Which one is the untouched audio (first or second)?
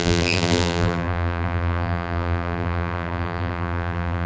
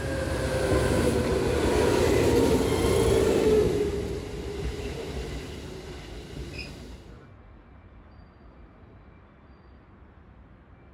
second